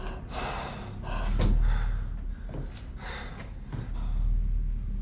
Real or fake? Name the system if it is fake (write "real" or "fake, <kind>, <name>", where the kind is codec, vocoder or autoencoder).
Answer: real